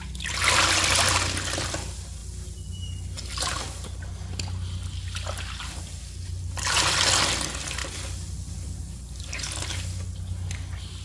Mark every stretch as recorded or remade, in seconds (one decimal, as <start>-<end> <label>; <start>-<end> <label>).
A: 0.0-11.0 recorded